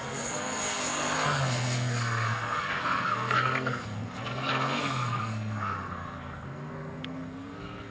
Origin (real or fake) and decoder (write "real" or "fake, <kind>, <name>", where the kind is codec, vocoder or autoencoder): fake, codec, SNAC